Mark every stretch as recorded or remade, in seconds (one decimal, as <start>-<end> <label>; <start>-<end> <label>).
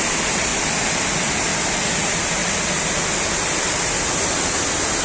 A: 0.0-5.0 recorded